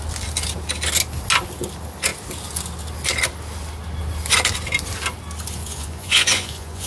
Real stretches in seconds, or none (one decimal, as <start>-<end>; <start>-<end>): 0.0-5.6